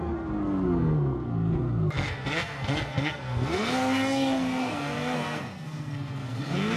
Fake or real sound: fake